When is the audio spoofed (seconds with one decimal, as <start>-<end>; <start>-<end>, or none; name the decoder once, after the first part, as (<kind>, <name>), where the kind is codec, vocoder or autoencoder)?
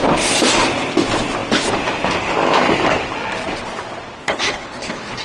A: 4.2-5.2 (codec, HILCodec)